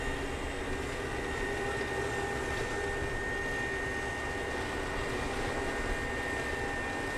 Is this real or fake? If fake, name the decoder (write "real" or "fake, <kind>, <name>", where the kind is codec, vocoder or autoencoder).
real